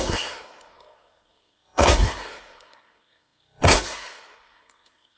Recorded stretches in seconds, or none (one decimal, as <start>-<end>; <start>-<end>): none